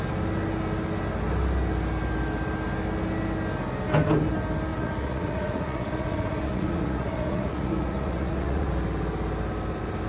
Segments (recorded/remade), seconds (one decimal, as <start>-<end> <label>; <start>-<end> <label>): 0.0-4.7 recorded; 4.7-8.7 remade; 8.7-10.1 recorded

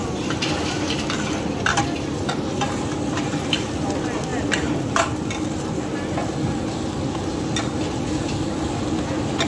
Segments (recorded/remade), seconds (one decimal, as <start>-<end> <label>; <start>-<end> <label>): 0.0-1.8 remade; 1.8-4.3 recorded; 4.3-5.3 remade; 5.3-9.5 recorded

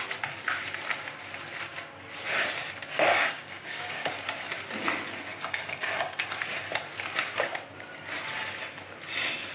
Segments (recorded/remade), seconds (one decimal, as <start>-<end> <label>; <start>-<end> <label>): 0.0-3.1 recorded; 3.1-4.1 remade; 4.1-5.3 recorded; 5.3-6.4 remade; 6.4-9.5 recorded

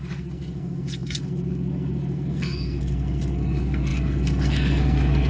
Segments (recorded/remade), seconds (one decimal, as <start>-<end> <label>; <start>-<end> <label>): 0.0-5.3 remade

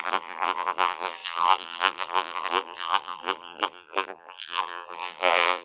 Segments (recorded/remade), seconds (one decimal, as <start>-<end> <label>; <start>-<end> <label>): 0.0-5.6 remade